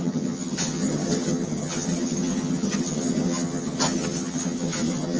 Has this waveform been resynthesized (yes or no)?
yes